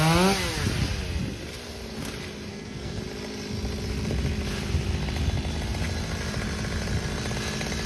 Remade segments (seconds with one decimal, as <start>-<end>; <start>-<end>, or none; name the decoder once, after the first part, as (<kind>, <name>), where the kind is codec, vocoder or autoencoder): 2.5-3.0 (codec, SNAC)